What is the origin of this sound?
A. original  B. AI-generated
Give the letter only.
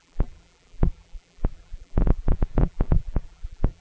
B